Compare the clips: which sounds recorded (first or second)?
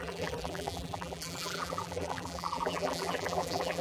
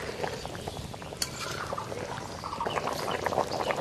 second